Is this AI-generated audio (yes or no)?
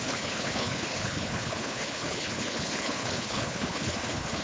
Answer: yes